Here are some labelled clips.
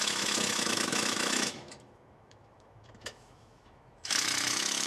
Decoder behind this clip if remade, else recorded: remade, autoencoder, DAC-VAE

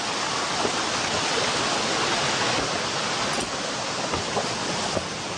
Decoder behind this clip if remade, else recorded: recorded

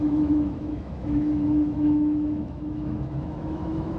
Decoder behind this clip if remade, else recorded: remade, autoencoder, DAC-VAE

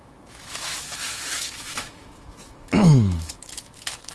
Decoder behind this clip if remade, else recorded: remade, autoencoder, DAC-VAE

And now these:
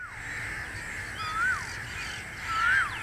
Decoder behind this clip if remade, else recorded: recorded